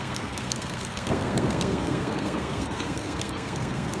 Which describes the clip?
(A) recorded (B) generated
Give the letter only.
B